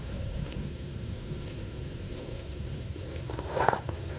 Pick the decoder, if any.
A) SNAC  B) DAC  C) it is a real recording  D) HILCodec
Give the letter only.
A